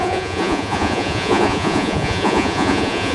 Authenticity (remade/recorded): remade